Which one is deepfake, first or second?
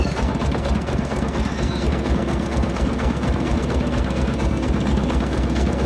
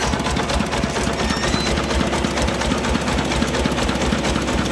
first